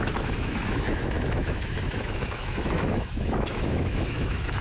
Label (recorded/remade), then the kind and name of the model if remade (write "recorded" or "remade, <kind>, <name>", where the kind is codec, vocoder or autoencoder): remade, autoencoder, DAC-VAE